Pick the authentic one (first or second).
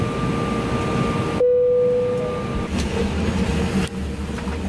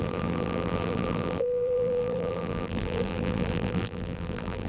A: first